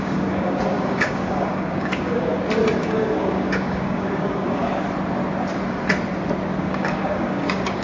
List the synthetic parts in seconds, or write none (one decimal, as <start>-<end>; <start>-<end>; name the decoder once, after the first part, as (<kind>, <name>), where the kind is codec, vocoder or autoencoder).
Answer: 0.0-2.3 (codec, DAC); 2.8-4.7; 6.6-7.8